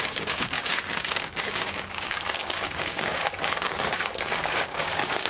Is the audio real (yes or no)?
no